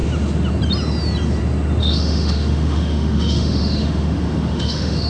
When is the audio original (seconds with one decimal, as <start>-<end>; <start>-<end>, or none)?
0.0-1.8